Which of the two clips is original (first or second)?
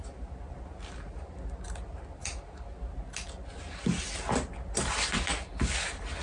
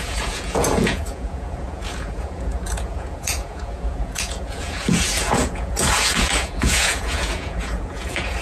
first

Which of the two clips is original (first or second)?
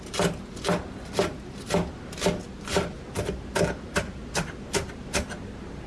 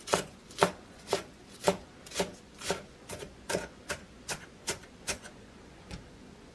first